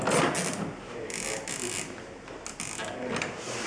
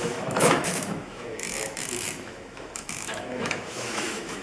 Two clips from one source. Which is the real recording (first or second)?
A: first